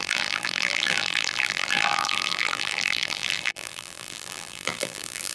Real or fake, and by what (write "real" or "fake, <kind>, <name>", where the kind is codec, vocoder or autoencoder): fake, vocoder, BigVGAN v2